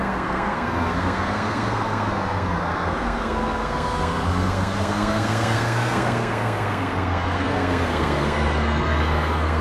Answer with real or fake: fake